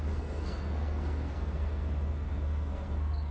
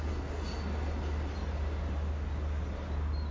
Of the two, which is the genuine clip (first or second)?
second